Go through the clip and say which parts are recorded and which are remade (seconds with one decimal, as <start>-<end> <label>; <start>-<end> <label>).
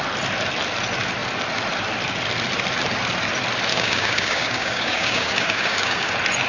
0.0-3.7 recorded; 3.7-6.1 remade; 6.1-6.5 recorded